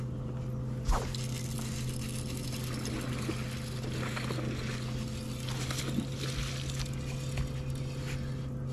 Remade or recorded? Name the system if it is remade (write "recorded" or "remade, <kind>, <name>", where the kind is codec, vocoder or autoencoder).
recorded